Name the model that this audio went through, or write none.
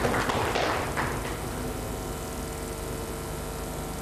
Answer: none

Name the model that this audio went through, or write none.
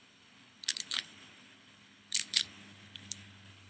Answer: codec, HILCodec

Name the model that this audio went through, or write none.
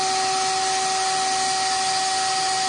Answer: none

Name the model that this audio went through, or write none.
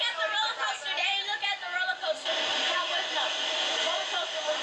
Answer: none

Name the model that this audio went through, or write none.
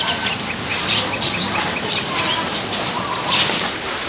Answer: none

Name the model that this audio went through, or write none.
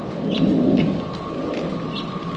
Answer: none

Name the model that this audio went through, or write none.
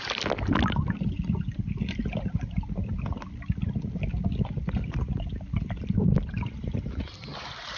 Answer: none